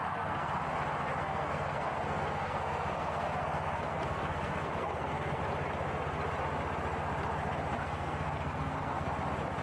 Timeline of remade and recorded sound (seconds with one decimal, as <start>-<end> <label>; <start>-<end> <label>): 0.0-0.5 remade; 0.5-1.0 recorded; 1.0-5.4 remade; 5.4-7.8 recorded; 7.8-9.1 remade; 9.1-9.6 recorded